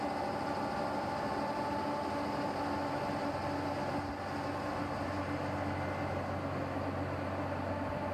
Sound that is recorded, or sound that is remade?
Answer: recorded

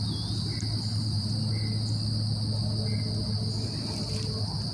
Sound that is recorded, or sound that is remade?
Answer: recorded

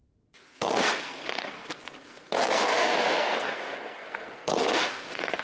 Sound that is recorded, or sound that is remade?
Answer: remade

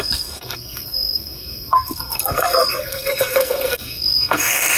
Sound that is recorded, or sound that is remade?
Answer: remade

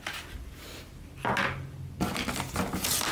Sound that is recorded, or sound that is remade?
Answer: recorded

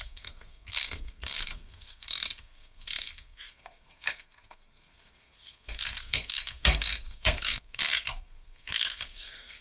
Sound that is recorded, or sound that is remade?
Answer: remade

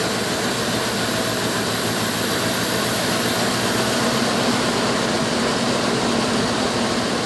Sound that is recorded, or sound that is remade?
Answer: recorded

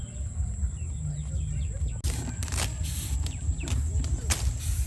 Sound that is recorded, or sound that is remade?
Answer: recorded